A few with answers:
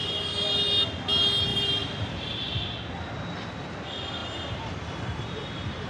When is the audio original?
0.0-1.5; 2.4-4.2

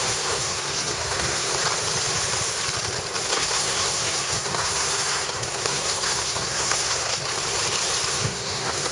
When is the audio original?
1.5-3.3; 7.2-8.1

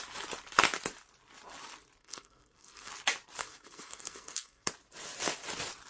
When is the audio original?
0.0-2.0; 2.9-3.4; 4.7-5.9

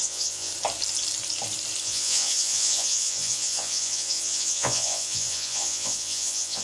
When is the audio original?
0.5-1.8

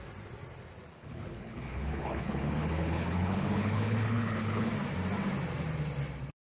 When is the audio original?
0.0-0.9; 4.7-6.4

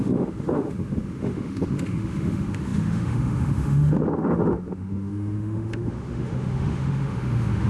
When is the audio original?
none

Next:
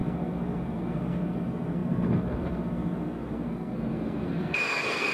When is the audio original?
none